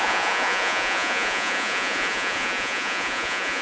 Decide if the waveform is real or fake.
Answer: fake